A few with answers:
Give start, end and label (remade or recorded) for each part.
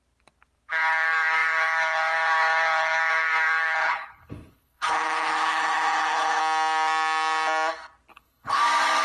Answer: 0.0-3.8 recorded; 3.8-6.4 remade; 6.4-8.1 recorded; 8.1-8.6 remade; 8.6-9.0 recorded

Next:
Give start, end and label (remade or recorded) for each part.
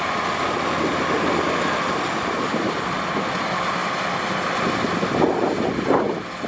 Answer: 0.0-6.5 recorded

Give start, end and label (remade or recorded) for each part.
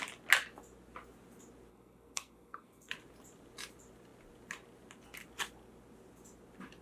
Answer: 0.0-1.7 recorded; 1.7-2.9 remade; 2.9-6.8 recorded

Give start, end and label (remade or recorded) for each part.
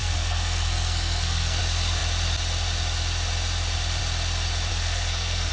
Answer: 0.0-1.6 remade; 1.6-4.7 recorded; 4.7-5.5 remade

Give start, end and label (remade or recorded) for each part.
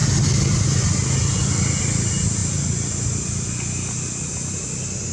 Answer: 0.0-5.1 recorded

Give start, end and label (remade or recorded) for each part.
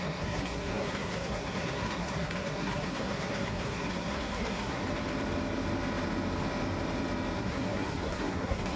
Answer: 0.0-4.8 remade; 4.8-7.4 recorded; 7.4-8.8 remade